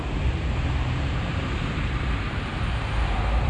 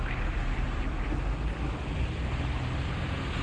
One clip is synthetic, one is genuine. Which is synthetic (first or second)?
first